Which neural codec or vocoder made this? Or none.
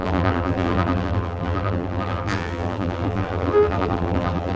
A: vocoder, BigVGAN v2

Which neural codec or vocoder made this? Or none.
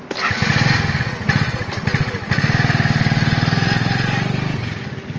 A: none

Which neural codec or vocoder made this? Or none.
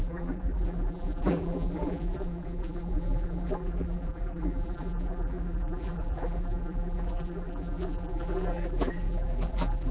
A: vocoder, BigVGAN v2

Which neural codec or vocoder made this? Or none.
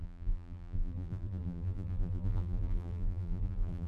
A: vocoder, BigVGAN v2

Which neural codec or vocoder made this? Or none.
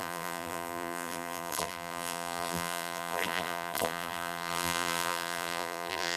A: vocoder, BigVGAN v2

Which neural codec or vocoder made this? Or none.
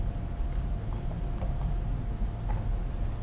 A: none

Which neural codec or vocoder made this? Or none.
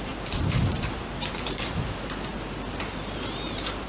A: vocoder, BigVGAN v2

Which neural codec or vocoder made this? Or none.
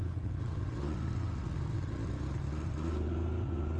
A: none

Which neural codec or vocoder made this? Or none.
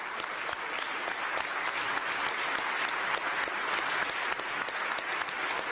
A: none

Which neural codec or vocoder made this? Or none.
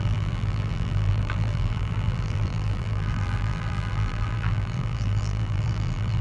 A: vocoder, BigVGAN v2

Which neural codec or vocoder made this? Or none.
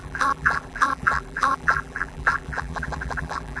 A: vocoder, BigVGAN v2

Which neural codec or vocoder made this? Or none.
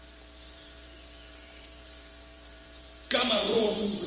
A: vocoder, BigVGAN v2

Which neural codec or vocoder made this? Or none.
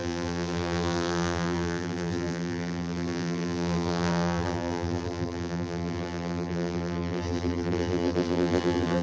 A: vocoder, BigVGAN v2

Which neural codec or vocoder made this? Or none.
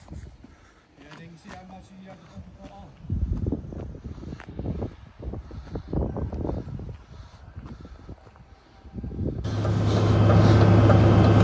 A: none